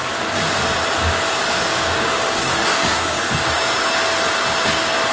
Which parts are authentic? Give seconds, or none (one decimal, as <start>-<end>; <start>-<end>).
0.0-1.7; 3.2-5.1